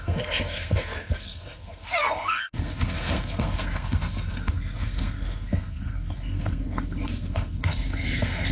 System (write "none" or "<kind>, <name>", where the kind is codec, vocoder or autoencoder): codec, SNAC